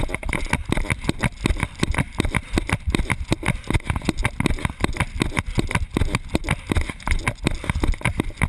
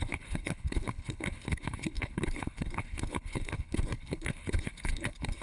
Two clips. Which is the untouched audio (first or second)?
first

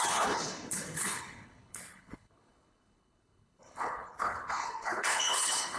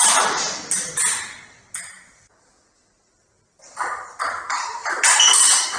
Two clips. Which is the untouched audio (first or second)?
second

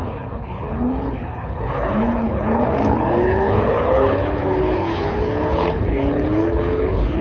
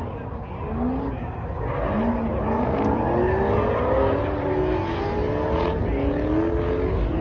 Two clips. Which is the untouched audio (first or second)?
second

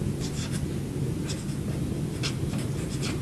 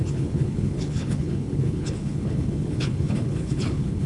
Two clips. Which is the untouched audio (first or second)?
first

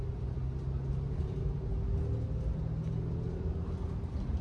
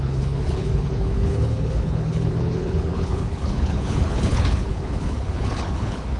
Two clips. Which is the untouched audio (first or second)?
first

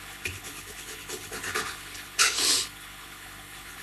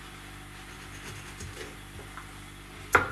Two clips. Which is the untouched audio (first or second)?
second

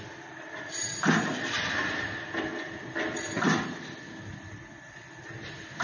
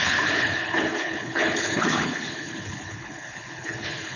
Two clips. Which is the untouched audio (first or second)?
first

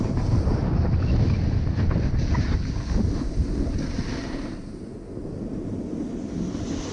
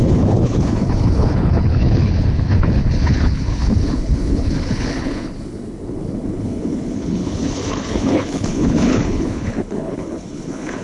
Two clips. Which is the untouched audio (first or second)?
first